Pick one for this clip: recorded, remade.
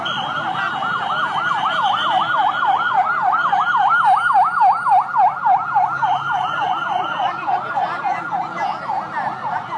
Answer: recorded